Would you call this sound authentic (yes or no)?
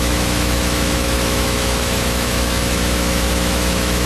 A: no